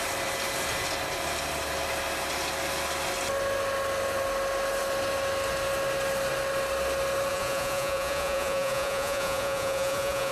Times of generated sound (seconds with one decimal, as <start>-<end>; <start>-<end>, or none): 7.3-10.3